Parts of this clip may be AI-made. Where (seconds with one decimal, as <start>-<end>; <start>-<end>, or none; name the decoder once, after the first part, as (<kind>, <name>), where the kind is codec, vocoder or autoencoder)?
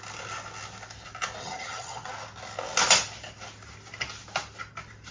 1.4-2.1 (vocoder, HiFi-GAN)